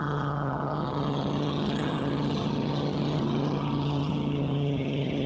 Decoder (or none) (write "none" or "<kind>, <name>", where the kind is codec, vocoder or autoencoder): vocoder, HiFi-GAN